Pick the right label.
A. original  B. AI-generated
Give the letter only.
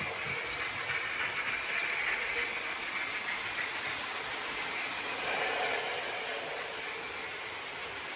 A